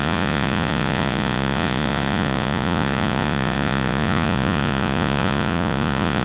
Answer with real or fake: fake